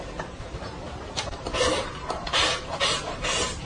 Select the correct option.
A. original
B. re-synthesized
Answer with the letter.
B